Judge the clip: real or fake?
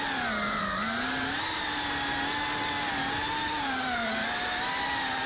real